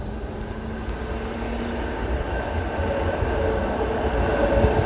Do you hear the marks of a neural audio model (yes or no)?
no